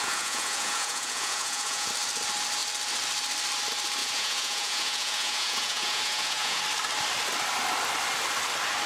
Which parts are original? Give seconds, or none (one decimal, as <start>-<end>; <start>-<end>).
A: 1.9-4.0; 6.6-8.9